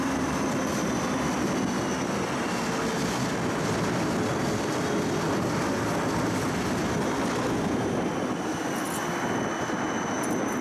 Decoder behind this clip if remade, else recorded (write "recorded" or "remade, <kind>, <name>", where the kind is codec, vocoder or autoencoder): recorded